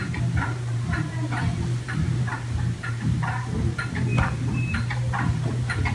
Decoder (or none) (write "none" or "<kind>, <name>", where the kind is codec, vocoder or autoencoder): vocoder, BigVGAN v2